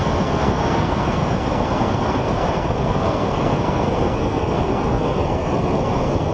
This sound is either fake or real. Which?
fake